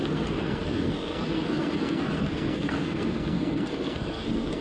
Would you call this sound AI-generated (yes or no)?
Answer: yes